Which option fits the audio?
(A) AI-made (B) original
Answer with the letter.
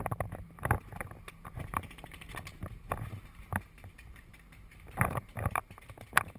A